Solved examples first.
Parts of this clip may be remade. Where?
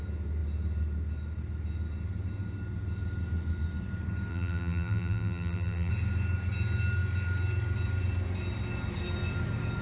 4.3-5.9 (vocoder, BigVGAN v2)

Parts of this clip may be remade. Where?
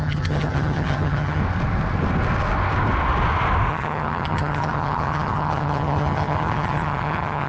0.0-1.4 (vocoder, HiFi-GAN); 3.7-7.5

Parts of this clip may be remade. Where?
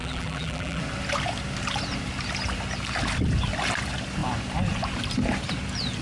0.0-0.8 (vocoder, BigVGAN v2)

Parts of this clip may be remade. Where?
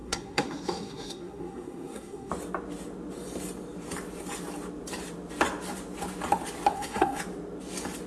0.0-2.3 (codec, SNAC); 6.7-7.2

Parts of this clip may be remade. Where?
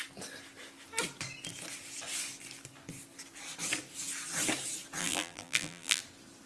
5.0-6.0 (vocoder, BigVGAN v2)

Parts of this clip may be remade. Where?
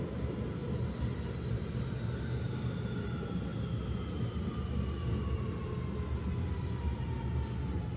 none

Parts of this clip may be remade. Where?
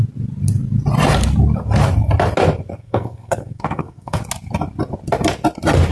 2.7-4.2 (codec, SNAC)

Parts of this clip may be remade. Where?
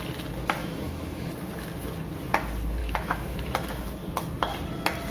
0.6-1.3 (autoencoder, DAC-VAE); 2.8-3.5